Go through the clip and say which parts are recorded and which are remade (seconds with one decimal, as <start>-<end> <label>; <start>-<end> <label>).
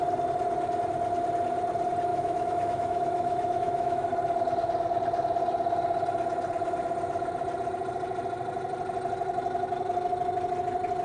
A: 0.0-2.1 recorded; 2.1-4.1 remade; 4.1-11.0 recorded